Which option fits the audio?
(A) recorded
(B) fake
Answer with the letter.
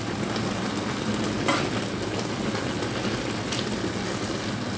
A